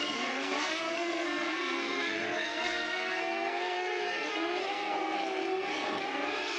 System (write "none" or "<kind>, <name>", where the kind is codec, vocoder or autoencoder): codec, SNAC